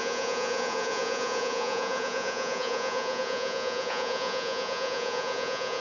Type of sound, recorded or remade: remade